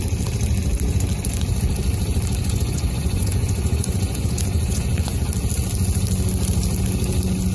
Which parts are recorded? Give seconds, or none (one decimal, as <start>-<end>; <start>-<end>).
0.0-2.4; 5.3-7.5